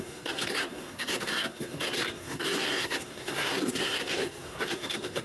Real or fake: fake